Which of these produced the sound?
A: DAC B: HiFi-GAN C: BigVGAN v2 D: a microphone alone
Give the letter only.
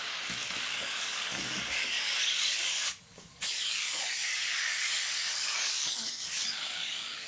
A